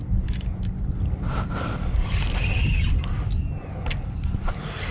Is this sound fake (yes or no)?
no